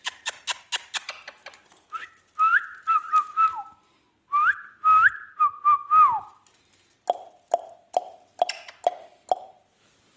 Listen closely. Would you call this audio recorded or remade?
recorded